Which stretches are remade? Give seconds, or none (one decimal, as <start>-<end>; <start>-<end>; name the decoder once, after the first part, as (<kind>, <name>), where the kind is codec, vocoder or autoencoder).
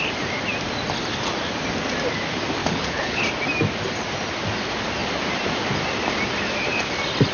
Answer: 2.6-3.2 (codec, HILCodec)